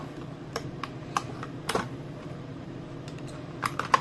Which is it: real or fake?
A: fake